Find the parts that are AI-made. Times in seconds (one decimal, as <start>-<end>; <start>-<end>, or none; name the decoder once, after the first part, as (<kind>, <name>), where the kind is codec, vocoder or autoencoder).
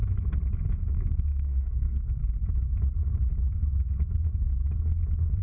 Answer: 0.9-2.2 (codec, SNAC)